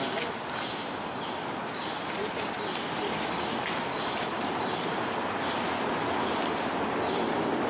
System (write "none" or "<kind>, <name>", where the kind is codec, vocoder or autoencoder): none